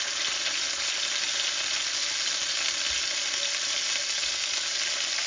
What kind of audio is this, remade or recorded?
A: recorded